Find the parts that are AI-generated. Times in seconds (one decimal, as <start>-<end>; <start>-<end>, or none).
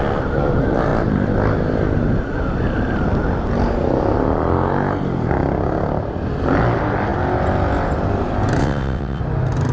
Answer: 8.6-9.2